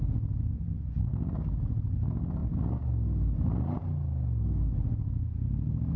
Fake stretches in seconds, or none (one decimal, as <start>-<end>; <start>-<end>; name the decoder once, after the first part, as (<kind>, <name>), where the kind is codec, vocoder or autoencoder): none